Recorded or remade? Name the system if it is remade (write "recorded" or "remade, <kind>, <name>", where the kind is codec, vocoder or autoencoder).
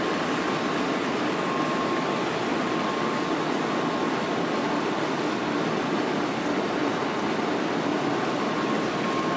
recorded